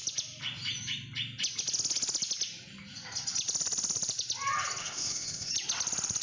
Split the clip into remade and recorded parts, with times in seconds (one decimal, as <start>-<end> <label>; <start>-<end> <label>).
0.0-4.8 recorded; 4.8-5.5 remade; 5.5-6.2 recorded